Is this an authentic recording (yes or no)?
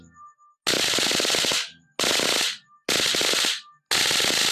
yes